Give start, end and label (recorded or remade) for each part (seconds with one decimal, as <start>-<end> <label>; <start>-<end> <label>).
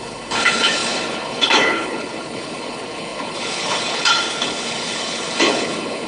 0.0-6.1 remade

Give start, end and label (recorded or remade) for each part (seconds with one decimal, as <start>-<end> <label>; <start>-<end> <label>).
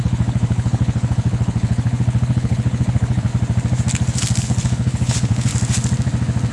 0.0-3.3 remade; 3.3-4.4 recorded; 4.4-5.5 remade; 5.5-6.5 recorded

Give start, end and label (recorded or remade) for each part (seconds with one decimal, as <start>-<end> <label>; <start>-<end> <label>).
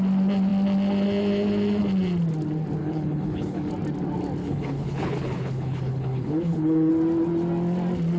0.0-2.8 recorded; 2.8-3.7 remade; 3.7-4.4 recorded; 4.4-6.9 remade; 6.9-8.2 recorded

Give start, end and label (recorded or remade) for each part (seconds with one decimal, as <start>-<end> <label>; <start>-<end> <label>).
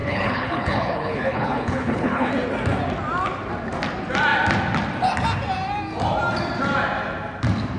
0.0-2.3 remade; 2.3-7.8 recorded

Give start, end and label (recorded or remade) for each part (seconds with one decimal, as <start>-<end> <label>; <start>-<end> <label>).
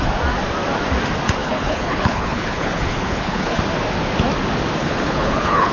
0.0-1.4 recorded; 1.4-3.6 remade; 3.6-4.8 recorded; 4.8-5.7 remade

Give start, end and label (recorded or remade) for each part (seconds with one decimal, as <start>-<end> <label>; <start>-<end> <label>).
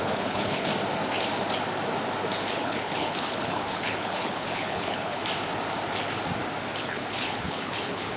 0.0-0.7 remade; 0.7-2.5 recorded; 2.5-5.2 remade; 5.2-6.8 recorded; 6.8-8.2 remade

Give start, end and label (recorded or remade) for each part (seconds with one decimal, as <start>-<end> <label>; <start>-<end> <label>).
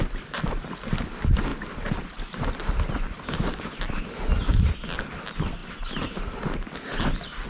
0.0-7.5 recorded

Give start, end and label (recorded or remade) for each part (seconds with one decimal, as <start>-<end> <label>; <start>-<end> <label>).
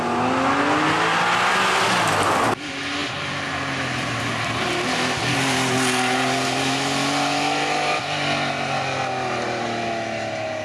0.0-10.6 recorded